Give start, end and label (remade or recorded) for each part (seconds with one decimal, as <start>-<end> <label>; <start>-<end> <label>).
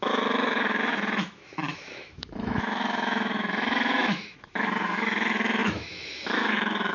0.0-6.9 remade